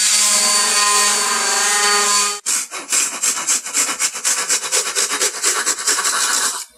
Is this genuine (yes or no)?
yes